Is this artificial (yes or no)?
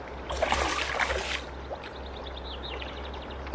no